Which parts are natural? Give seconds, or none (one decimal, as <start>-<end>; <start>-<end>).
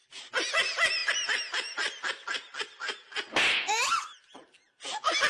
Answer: 0.0-5.3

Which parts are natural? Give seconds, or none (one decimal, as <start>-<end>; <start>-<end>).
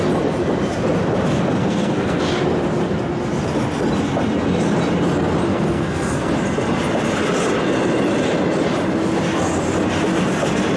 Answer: 0.0-1.6; 2.2-5.5; 6.3-10.8